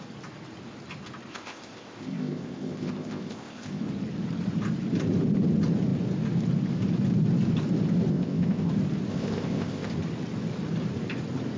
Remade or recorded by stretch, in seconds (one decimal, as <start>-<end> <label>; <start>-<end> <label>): 0.0-1.3 recorded; 1.3-3.8 remade; 3.8-8.1 recorded; 8.1-8.7 remade; 8.7-9.1 recorded; 9.1-9.9 remade; 9.9-11.6 recorded